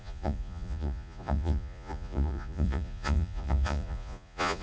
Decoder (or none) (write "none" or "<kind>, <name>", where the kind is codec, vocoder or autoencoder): vocoder, Vocos